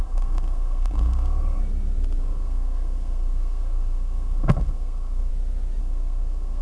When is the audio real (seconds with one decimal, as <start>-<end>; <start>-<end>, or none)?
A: 1.6-2.2; 5.3-5.8